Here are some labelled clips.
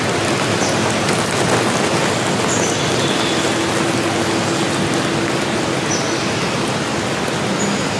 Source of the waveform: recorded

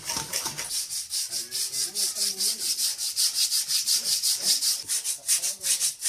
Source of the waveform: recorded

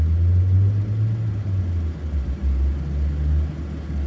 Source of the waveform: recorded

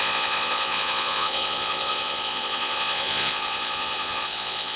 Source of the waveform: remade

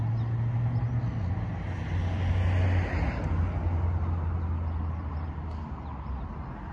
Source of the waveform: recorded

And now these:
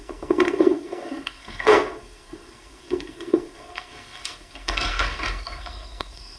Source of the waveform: remade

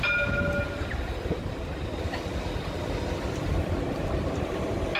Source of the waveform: recorded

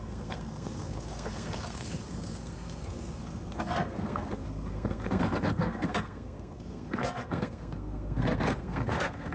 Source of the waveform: remade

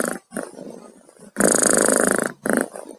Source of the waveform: recorded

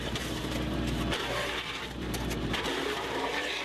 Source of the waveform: remade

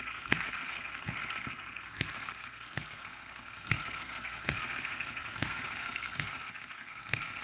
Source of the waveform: remade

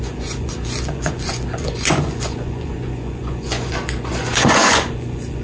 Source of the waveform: remade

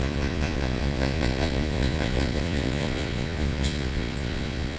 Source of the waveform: remade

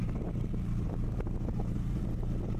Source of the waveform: remade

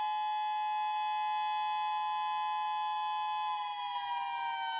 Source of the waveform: recorded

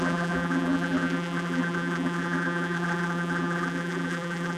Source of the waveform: remade